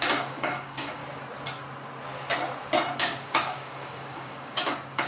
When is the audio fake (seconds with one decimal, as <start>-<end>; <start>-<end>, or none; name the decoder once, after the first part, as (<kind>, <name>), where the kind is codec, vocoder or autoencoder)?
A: 0.0-1.0 (codec, DAC); 3.0-5.1